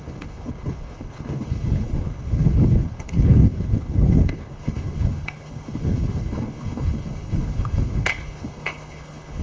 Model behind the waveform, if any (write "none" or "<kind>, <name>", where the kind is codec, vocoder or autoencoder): codec, HILCodec